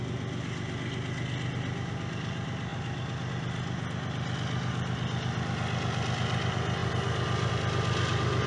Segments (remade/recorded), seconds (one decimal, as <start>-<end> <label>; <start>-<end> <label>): 0.0-8.5 recorded